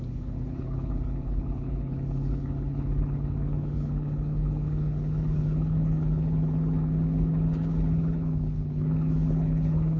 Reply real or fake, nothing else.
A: fake